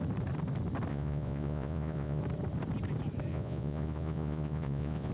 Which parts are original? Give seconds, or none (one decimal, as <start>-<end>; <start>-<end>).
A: 0.0-0.9; 2.2-3.3